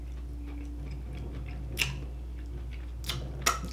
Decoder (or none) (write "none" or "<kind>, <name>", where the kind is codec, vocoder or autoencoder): none